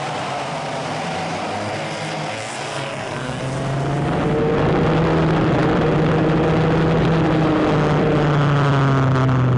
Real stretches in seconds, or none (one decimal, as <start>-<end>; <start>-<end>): 0.0-2.7; 3.4-9.6

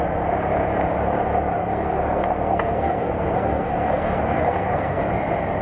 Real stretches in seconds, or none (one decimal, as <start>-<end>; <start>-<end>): 0.0-1.6; 5.0-5.6

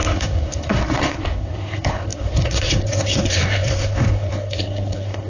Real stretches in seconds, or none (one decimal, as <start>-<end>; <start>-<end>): none

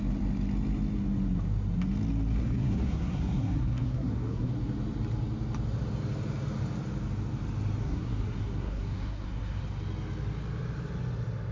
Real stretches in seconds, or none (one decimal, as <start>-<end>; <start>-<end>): 0.0-2.4; 4.5-7.8; 9.6-11.5

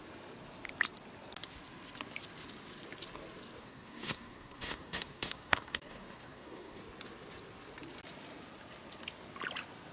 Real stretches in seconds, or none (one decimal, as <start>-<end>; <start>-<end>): 0.0-3.6; 6.8-9.9

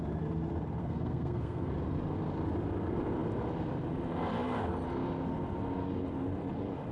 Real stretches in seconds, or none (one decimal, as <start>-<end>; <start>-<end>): 0.0-0.8; 1.7-6.9

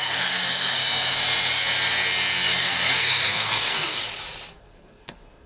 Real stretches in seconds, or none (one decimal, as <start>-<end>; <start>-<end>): 0.8-2.6; 4.0-4.5